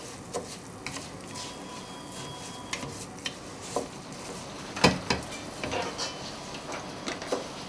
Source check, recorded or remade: recorded